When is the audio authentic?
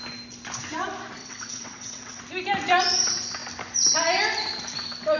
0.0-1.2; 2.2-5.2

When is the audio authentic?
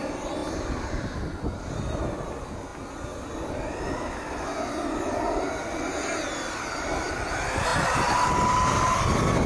0.0-9.5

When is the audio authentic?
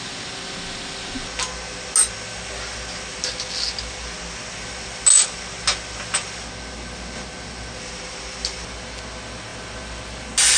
0.0-10.6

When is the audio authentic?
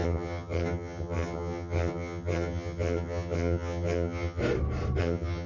4.4-5.0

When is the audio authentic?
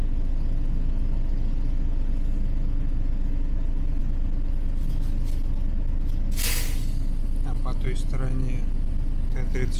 0.0-9.8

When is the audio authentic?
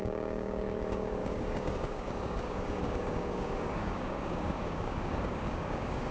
none